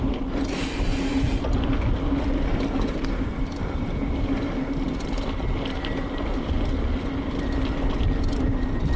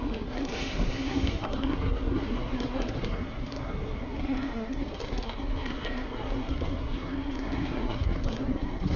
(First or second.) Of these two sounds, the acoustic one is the first